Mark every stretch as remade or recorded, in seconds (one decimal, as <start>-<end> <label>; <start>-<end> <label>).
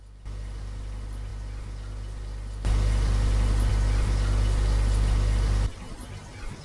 0.0-6.6 recorded